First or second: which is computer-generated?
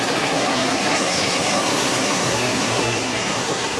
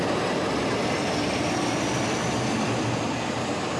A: first